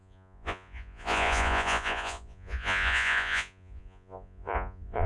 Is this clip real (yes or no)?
no